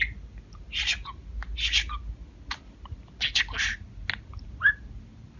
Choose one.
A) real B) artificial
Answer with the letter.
A